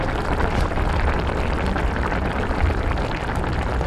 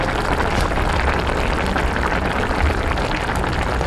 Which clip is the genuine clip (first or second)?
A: second